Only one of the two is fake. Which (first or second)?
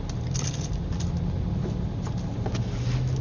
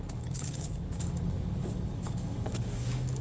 second